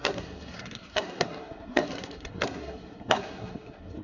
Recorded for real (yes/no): no